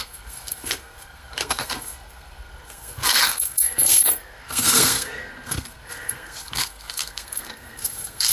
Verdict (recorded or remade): remade